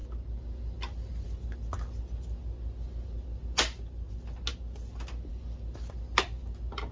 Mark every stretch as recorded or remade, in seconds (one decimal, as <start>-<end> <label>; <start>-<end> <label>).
0.0-6.9 recorded